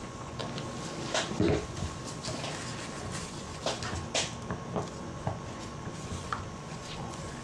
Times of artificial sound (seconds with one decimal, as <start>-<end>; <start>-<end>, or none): 0.0-0.4; 1.4-2.0; 2.9-3.6; 4.9-7.4